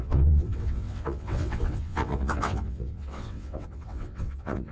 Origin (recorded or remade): remade